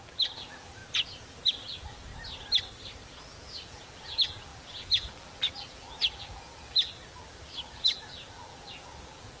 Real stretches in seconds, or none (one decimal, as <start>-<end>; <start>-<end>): 0.8-1.5; 2.1-3.1